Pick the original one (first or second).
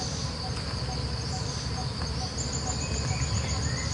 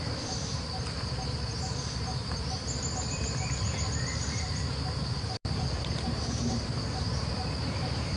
first